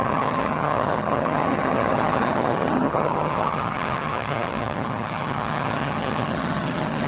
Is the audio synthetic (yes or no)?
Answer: yes